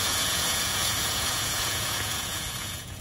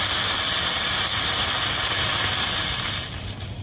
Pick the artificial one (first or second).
first